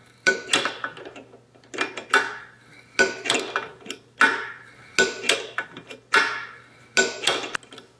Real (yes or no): yes